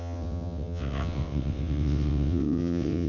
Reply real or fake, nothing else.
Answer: fake